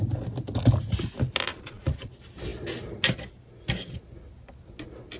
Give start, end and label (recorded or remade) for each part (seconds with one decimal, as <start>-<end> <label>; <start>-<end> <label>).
0.0-1.5 recorded; 1.5-2.1 remade; 2.1-5.2 recorded